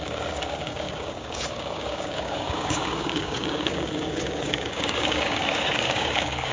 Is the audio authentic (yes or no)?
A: no